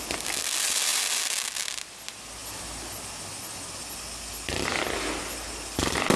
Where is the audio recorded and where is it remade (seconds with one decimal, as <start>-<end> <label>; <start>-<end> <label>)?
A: 0.0-6.2 recorded